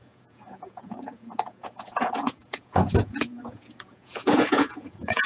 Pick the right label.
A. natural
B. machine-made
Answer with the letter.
B